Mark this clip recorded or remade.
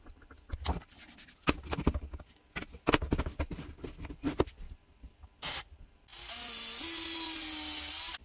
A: recorded